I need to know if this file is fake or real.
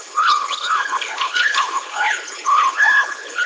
fake